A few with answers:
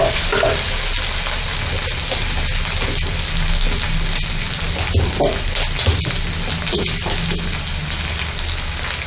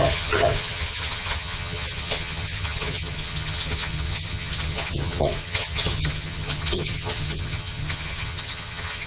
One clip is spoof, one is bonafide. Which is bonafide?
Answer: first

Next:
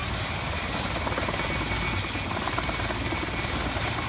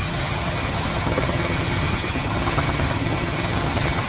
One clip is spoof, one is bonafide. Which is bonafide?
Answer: first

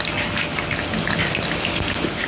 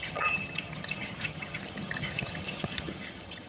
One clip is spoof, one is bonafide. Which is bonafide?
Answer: first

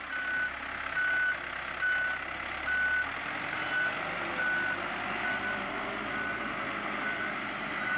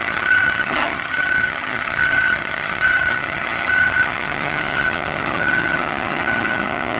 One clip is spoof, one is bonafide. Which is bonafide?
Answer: first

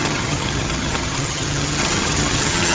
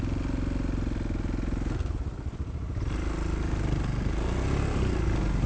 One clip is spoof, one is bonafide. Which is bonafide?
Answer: second